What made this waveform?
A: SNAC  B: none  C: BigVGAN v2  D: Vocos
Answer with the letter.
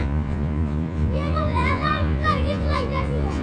D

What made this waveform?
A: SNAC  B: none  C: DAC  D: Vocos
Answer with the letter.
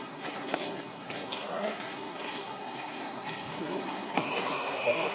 A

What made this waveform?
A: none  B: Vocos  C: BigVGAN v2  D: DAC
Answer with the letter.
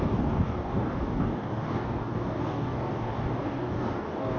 D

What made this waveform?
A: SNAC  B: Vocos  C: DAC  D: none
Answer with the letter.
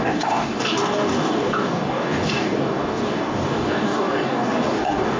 C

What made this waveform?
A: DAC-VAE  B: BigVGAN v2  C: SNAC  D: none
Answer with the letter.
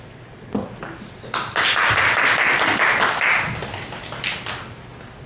D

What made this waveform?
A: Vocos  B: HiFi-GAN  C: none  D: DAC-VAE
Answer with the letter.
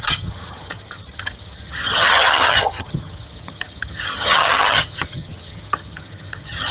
B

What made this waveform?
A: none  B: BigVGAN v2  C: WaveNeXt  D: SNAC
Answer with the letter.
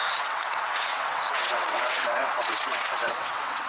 C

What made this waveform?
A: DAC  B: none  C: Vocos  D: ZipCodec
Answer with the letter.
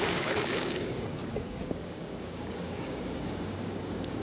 A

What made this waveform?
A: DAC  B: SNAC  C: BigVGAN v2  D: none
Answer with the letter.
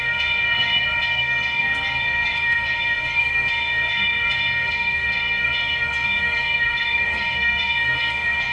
B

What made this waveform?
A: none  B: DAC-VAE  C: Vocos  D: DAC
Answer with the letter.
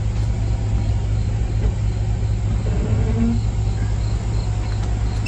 A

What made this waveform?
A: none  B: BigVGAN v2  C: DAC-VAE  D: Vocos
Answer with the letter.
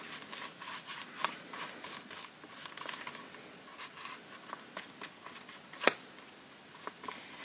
A